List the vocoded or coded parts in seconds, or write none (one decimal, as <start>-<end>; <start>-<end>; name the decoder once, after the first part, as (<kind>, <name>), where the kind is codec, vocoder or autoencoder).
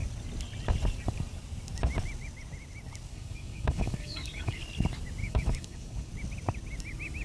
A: 3.1-4.6 (codec, DAC); 5.2-6.1